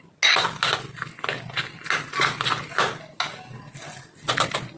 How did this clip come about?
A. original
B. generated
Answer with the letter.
A